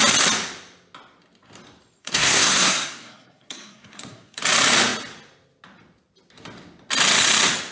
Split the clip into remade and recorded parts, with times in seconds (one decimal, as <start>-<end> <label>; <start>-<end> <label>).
0.0-2.0 recorded; 2.0-4.4 remade; 4.4-7.7 recorded